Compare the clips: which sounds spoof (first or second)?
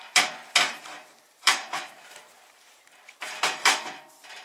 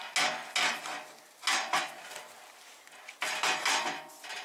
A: first